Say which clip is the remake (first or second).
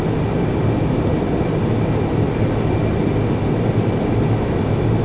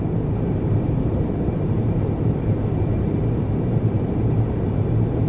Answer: second